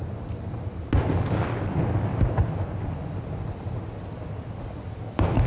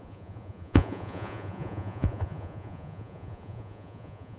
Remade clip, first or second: second